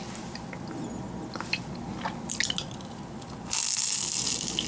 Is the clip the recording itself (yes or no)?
yes